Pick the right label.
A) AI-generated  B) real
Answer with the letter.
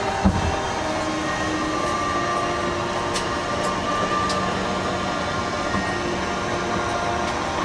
B